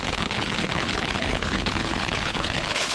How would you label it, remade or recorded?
remade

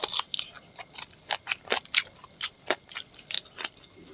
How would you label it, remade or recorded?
recorded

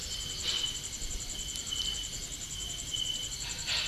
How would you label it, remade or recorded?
recorded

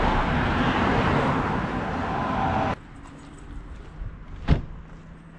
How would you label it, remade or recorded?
recorded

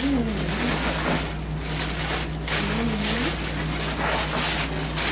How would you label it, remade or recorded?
recorded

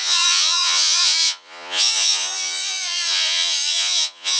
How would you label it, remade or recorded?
remade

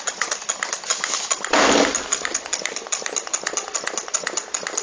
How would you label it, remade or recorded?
remade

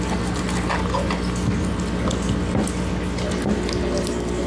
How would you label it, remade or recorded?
recorded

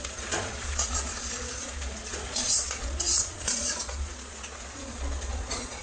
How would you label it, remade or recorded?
remade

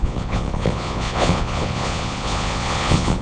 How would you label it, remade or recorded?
remade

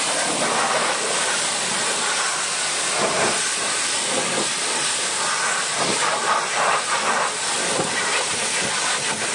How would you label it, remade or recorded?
recorded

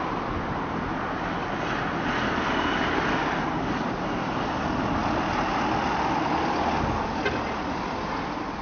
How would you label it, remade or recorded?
recorded